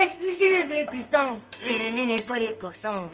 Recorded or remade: remade